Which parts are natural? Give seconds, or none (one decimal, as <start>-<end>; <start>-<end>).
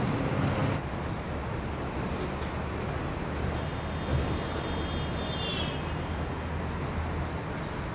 0.0-4.1; 6.2-7.9